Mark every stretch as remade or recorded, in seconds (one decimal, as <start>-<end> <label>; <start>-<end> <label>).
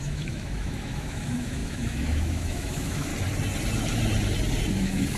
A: 0.0-3.1 remade; 3.1-4.7 recorded; 4.7-5.2 remade